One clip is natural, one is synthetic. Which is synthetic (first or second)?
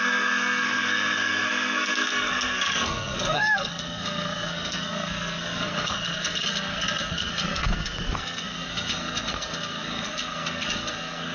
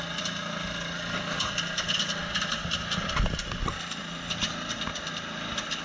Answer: first